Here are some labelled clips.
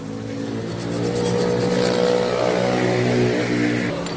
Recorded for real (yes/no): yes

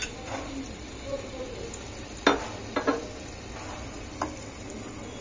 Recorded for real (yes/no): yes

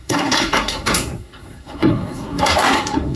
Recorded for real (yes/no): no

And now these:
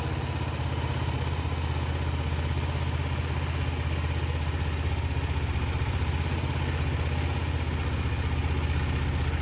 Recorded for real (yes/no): yes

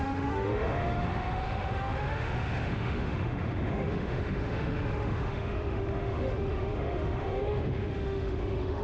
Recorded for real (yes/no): no